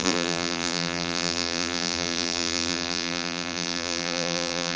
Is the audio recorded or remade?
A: remade